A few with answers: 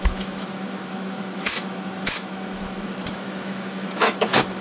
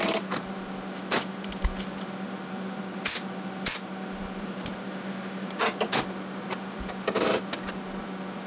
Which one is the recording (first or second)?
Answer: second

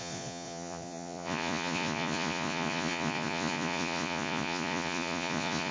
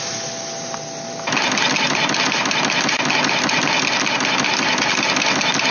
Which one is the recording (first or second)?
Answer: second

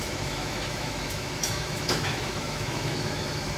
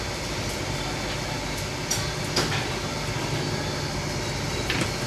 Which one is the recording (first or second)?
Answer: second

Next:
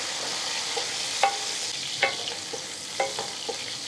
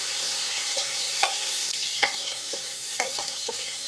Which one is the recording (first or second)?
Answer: first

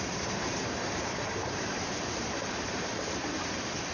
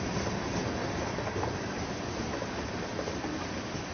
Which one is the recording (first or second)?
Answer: second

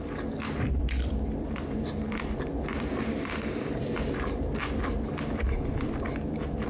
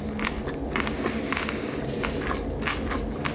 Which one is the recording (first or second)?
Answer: second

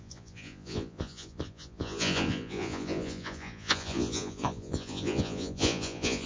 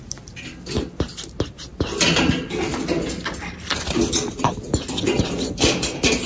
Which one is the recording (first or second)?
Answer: second